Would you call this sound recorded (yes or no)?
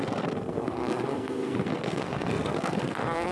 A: no